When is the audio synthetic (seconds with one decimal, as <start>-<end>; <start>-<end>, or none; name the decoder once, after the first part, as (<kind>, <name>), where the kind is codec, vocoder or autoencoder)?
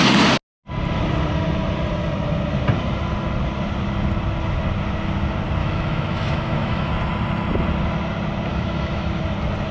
5.6-6.9 (autoencoder, DAC-VAE); 8.5-9.2